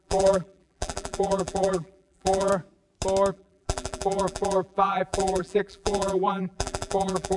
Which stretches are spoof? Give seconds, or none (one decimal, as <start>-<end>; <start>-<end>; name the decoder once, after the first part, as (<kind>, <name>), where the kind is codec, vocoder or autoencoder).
0.0-2.5 (vocoder, BigVGAN v2); 3.3-7.4